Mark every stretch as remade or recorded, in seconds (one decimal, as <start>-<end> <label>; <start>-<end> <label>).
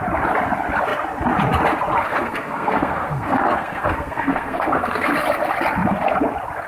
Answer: 0.0-2.0 recorded; 2.0-5.1 remade; 5.1-6.7 recorded